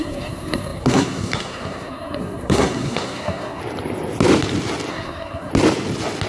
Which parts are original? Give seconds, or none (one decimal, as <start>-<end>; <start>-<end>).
3.6-4.9; 5.5-6.3